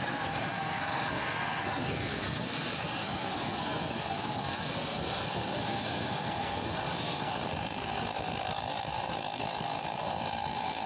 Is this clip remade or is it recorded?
remade